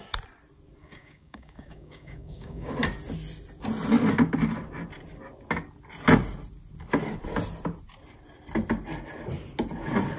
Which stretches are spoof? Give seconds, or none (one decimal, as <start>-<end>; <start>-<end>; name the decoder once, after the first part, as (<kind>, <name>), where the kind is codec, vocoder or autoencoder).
0.8-2.7 (codec, DAC)